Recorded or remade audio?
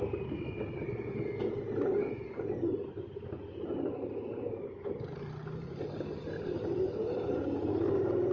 recorded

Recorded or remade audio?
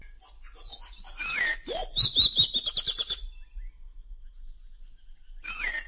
recorded